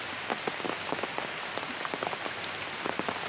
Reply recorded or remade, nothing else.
recorded